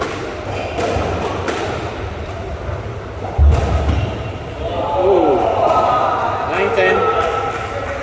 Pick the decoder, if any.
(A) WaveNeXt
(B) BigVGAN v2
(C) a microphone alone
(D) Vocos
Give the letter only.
C